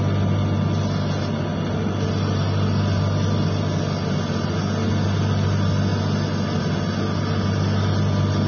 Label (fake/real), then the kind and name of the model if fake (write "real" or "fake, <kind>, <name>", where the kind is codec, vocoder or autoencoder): real